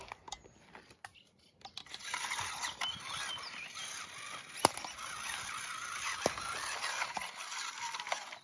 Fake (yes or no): no